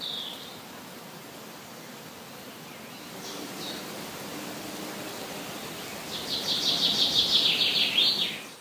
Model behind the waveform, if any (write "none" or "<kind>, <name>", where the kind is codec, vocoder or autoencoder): none